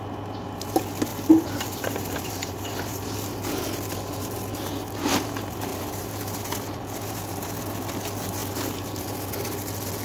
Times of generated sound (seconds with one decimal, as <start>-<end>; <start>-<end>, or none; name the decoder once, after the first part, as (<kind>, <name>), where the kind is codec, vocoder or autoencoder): 1.1-3.6 (vocoder, BigVGAN v2); 5.7-6.4